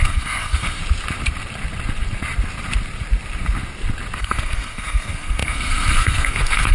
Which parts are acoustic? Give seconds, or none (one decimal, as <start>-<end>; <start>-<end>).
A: 0.8-4.2